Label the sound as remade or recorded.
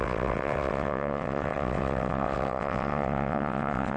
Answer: remade